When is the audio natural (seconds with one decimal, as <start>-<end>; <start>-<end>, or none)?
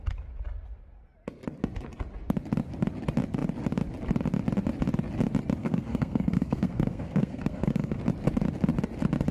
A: 0.0-5.6; 8.0-9.3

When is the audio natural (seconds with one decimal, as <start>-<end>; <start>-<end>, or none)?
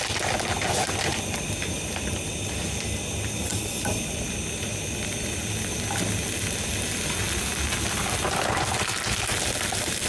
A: 0.0-10.1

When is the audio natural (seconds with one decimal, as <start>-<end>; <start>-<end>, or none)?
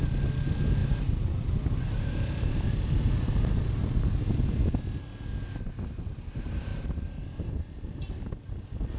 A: 0.0-0.8; 3.5-6.7; 8.1-9.0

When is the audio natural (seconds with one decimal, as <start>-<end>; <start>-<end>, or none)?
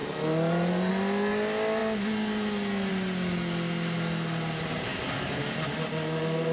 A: 0.0-6.5